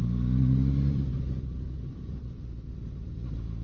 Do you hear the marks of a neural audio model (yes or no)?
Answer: yes